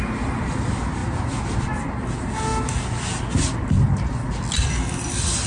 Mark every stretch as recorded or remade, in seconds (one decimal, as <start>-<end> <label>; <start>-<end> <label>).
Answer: 0.0-5.5 recorded